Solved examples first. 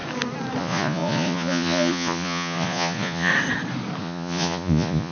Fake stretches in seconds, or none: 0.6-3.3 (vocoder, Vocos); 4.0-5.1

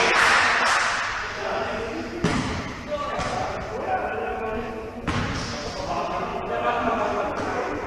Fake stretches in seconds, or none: 4.2-4.7 (codec, DAC)